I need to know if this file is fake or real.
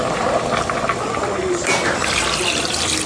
real